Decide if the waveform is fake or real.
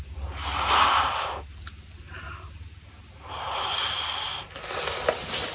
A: real